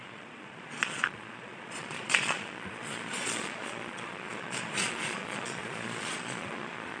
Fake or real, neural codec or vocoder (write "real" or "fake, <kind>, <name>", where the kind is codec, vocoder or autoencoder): fake, vocoder, Vocos